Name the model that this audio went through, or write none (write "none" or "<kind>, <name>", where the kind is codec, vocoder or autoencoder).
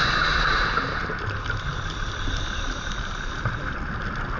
none